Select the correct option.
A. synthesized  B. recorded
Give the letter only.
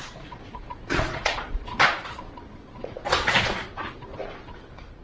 A